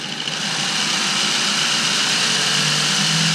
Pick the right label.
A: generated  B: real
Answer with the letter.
B